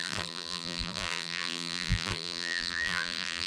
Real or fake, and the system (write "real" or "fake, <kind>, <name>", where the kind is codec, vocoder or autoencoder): fake, vocoder, BigVGAN v2